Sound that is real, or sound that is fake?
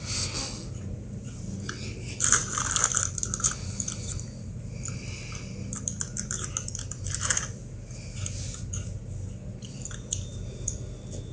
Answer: real